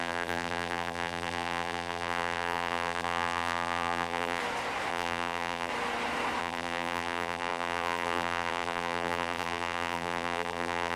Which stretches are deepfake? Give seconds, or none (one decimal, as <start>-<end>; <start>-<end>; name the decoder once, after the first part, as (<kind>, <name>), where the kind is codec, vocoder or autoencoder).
0.0-4.4 (vocoder, BigVGAN v2); 4.9-5.7; 6.4-11.0